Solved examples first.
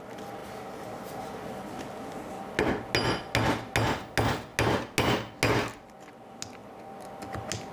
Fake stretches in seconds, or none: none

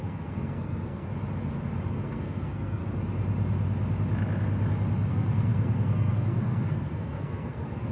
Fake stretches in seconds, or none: 0.0-1.1; 1.9-2.8; 5.1-7.9

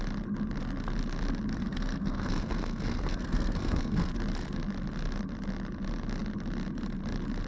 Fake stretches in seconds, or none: 1.5-4.1

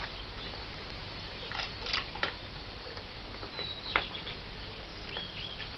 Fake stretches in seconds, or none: none

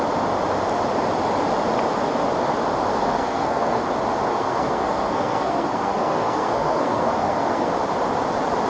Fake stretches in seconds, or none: 2.9-3.8; 4.3-7.7

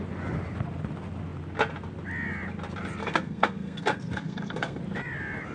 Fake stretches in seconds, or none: 3.0-4.8